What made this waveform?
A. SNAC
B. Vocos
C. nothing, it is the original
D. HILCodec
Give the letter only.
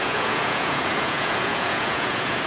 B